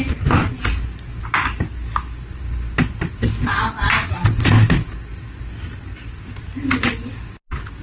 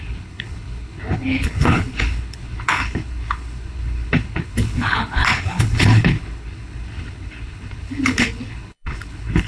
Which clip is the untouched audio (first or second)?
first